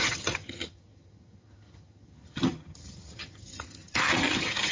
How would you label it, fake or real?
fake